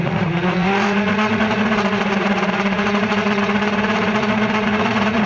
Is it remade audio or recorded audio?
remade